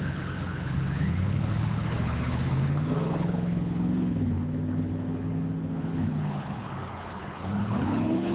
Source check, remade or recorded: remade